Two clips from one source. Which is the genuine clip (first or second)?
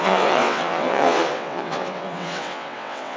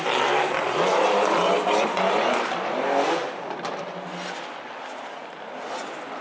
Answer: second